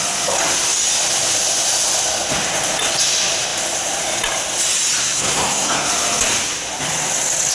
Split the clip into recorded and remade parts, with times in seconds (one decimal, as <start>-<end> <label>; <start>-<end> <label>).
0.0-5.0 recorded; 5.0-5.9 remade; 5.9-7.5 recorded